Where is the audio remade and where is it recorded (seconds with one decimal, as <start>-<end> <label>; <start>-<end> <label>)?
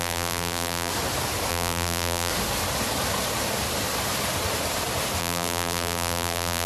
0.0-0.9 remade; 0.9-1.5 recorded; 1.5-2.3 remade; 2.3-5.2 recorded; 5.2-6.7 remade